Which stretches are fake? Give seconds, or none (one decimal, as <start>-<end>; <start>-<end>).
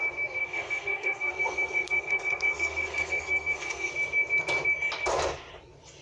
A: 0.4-3.9